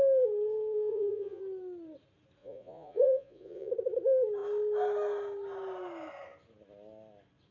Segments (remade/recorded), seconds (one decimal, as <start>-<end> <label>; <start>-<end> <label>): 0.0-0.9 recorded; 0.9-1.4 remade; 1.4-2.4 recorded; 2.4-3.7 remade; 3.7-7.5 recorded